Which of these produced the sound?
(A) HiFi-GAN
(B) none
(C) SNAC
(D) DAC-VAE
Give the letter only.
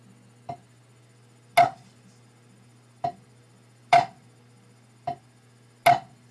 B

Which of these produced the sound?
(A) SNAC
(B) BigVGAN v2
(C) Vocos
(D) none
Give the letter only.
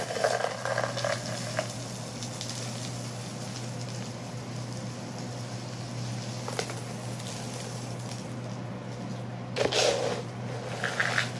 D